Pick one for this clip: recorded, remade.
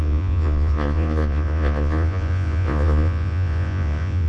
remade